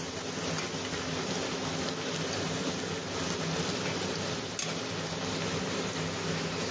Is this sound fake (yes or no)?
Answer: no